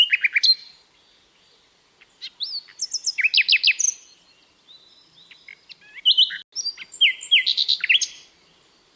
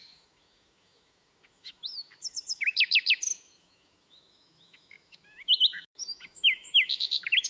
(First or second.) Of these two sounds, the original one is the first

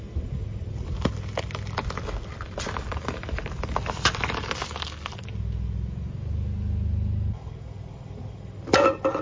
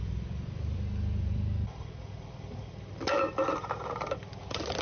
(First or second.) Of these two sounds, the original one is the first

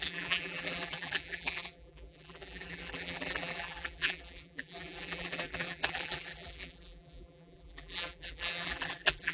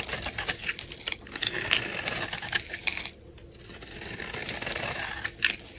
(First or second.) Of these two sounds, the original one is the second